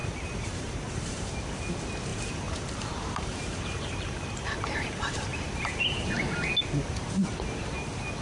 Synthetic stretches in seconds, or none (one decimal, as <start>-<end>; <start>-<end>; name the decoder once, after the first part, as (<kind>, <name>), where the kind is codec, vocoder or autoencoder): 0.0-1.3 (vocoder, BigVGAN v2); 2.1-5.7